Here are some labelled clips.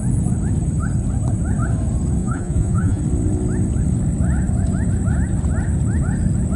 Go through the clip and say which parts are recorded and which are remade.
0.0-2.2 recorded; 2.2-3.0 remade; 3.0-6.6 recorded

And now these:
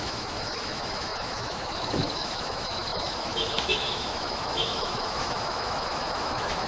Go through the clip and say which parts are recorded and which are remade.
0.0-6.7 remade

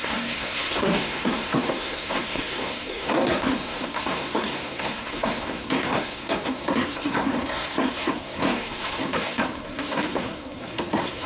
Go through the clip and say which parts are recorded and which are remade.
0.0-11.3 remade